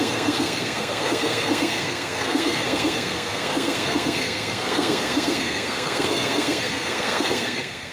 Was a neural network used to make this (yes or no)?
yes